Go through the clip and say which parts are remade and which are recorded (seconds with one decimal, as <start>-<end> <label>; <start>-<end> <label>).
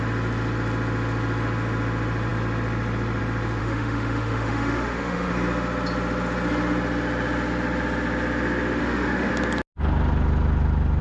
0.0-3.6 recorded; 3.6-5.3 remade; 5.3-8.8 recorded; 8.8-9.3 remade; 9.3-11.0 recorded